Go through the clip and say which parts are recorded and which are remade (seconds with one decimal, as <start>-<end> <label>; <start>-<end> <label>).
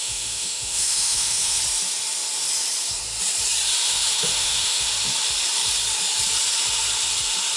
0.0-1.6 remade; 1.6-3.9 recorded; 3.9-4.9 remade; 4.9-7.6 recorded